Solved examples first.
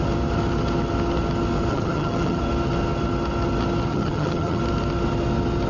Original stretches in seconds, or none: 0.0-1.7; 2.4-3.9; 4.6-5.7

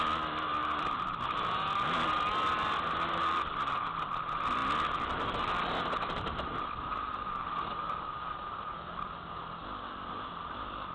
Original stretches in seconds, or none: 0.0-10.9

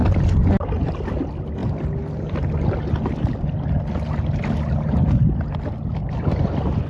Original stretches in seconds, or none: 0.0-6.9

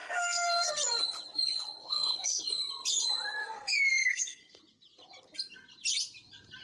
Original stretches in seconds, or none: 0.7-1.8; 2.6-3.4; 4.6-6.6

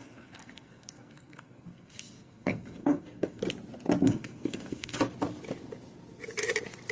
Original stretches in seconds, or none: 3.4-4.0; 5.0-6.9